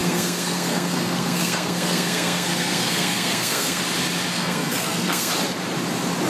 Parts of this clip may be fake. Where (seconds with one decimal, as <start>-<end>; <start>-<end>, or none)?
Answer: 0.0-3.8; 4.3-5.3